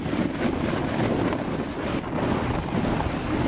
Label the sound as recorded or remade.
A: recorded